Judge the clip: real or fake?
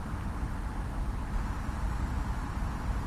real